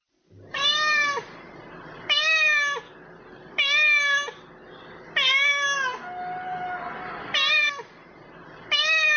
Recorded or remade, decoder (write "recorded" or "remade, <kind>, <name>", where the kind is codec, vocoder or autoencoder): recorded